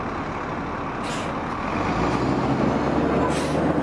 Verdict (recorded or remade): recorded